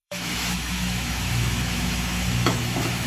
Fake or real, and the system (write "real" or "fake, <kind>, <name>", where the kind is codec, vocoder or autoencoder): fake, autoencoder, DAC-VAE